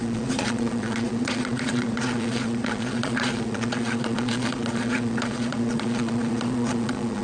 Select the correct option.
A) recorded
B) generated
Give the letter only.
B